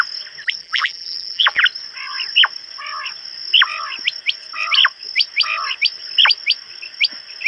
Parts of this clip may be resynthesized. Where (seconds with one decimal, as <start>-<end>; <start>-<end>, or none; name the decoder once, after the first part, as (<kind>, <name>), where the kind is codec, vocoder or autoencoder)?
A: 0.6-1.6 (vocoder, BigVGAN v2)